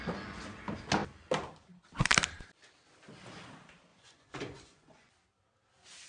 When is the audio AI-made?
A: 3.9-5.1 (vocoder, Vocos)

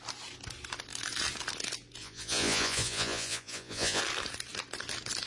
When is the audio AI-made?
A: 2.0-4.0 (vocoder, Vocos)

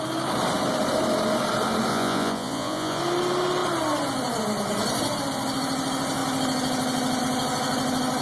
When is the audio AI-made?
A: 1.9-3.0 (vocoder, Vocos)

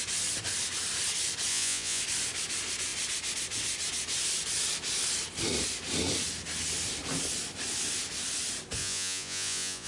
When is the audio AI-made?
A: 1.5-2.0 (vocoder, Vocos); 8.8-9.9

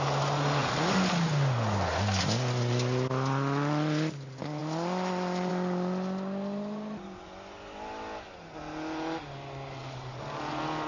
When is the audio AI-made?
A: none

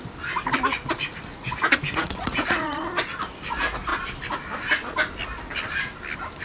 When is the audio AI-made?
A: 1.3-2.8 (vocoder, Vocos)

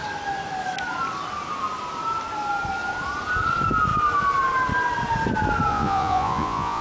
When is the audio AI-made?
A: 5.7-6.8 (vocoder, Vocos)